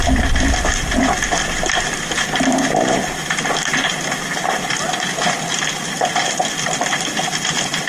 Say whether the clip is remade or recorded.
recorded